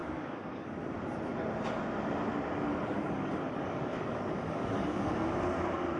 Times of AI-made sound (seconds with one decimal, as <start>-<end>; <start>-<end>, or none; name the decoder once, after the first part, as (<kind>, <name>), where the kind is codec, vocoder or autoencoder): 0.0-0.7 (codec, DAC); 2.7-5.1